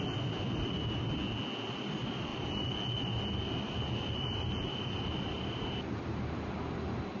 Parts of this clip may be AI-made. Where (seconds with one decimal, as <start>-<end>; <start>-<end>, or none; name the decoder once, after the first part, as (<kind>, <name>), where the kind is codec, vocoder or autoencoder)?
none